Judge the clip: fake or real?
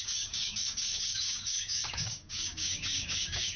fake